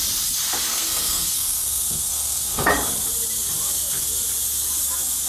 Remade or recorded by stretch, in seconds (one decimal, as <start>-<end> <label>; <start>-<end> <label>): 0.0-0.7 recorded; 0.7-2.7 remade; 2.7-5.3 recorded